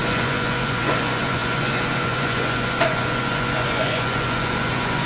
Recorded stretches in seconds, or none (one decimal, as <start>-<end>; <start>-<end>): none